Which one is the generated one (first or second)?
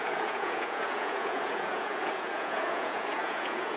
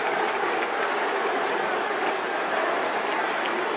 first